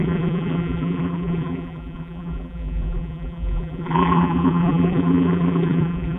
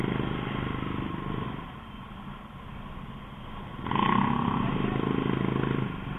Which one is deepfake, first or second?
first